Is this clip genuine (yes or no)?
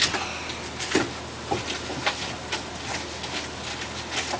yes